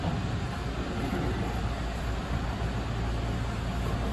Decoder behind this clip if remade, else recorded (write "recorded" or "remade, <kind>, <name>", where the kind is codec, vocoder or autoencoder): recorded